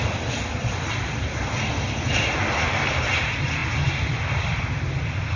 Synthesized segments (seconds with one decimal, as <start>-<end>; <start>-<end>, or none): none